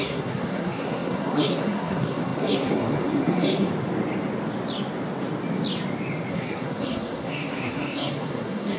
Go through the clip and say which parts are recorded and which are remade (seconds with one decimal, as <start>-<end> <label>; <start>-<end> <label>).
0.0-3.7 remade; 3.7-6.3 recorded; 6.3-8.8 remade